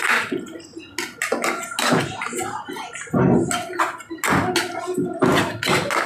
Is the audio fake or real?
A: real